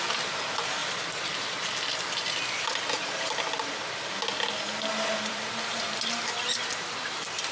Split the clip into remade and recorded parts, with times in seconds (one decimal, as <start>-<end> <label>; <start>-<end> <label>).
0.0-0.8 remade; 0.8-5.3 recorded; 5.3-7.5 remade

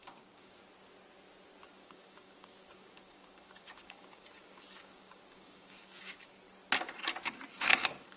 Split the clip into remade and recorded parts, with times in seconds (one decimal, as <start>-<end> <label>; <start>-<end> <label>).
0.0-0.6 remade; 0.6-1.7 recorded; 1.7-6.3 remade; 6.3-7.5 recorded; 7.5-8.2 remade

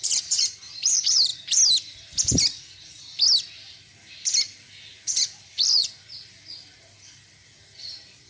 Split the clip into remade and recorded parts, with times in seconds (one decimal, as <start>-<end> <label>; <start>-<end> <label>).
0.0-1.3 remade; 1.3-3.7 recorded; 3.7-8.3 remade

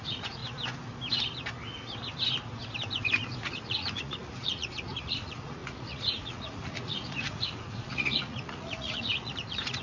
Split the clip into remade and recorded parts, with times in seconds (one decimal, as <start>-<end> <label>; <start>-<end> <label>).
0.0-0.4 remade; 0.4-3.4 recorded; 3.4-9.8 remade

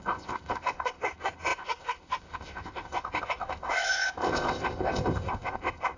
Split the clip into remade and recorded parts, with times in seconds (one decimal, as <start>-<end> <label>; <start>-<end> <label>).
0.0-6.0 remade

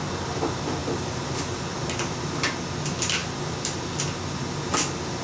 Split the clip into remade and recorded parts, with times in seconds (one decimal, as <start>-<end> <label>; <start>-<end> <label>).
0.0-5.2 recorded